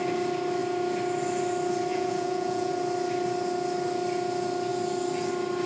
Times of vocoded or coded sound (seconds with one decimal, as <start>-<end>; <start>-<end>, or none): 1.9-2.7